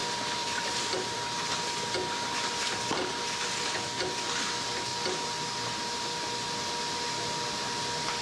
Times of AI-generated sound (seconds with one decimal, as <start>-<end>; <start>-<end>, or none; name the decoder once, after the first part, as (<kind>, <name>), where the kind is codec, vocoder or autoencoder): 0.0-1.2 (vocoder, BigVGAN v2)